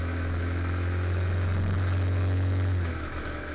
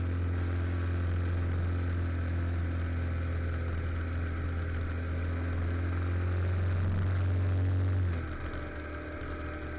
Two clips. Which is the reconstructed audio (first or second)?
first